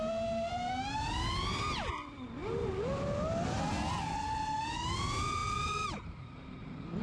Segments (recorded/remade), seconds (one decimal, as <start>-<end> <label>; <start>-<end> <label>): 0.0-7.0 recorded

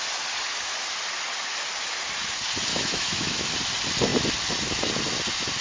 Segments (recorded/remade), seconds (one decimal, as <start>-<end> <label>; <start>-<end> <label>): 0.0-2.7 recorded; 2.7-3.5 remade; 3.5-5.6 recorded